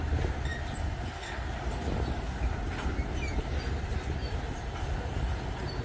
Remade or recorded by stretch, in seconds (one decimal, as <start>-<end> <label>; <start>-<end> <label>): 0.0-5.8 recorded